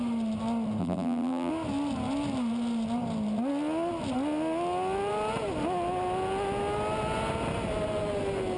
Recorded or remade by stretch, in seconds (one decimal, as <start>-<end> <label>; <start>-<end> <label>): 0.0-0.8 recorded; 0.8-1.5 remade; 1.5-8.6 recorded